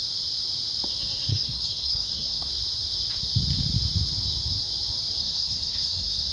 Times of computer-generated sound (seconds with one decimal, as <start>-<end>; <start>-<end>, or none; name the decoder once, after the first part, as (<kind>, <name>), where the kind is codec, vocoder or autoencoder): 1.3-2.5 (codec, SNAC); 5.2-6.3